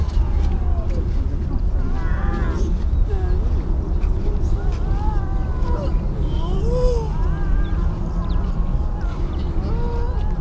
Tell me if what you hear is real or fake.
real